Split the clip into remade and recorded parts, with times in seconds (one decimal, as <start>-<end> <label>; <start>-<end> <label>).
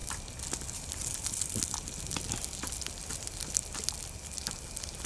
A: 0.0-5.1 recorded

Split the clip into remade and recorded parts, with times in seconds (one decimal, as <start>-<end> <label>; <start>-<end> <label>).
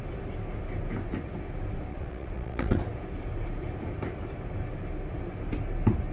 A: 0.0-1.9 recorded; 1.9-2.8 remade; 2.8-6.1 recorded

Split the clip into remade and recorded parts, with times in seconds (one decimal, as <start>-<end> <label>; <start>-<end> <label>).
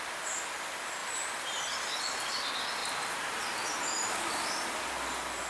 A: 0.0-1.0 recorded; 1.0-2.3 remade; 2.3-2.8 recorded; 2.8-4.9 remade; 4.9-5.5 recorded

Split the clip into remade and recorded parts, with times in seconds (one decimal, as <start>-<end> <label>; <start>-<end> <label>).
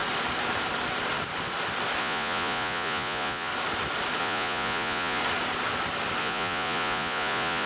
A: 0.0-2.0 recorded; 2.0-3.5 remade; 3.5-4.2 recorded; 4.2-5.2 remade; 5.2-6.2 recorded; 6.2-7.7 remade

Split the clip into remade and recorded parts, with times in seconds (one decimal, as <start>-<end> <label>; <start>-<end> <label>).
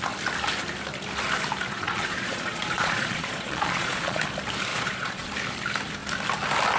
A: 0.0-1.7 recorded; 1.7-4.2 remade; 4.2-4.7 recorded; 4.7-5.3 remade; 5.3-6.8 recorded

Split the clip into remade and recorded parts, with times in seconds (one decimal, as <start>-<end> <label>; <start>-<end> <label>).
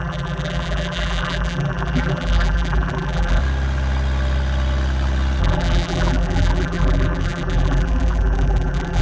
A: 0.0-3.4 remade; 3.4-5.4 recorded; 5.4-9.0 remade